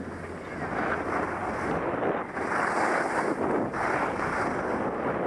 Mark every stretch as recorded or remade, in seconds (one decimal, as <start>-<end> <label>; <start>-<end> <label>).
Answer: 0.0-5.3 recorded